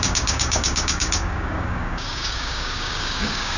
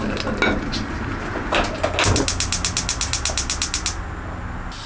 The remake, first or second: first